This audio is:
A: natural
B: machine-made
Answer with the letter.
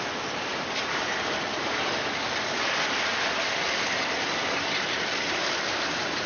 A